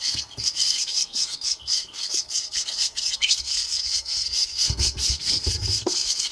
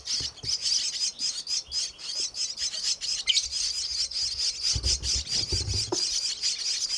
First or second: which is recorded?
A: second